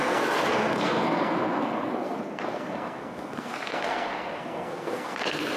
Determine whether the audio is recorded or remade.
remade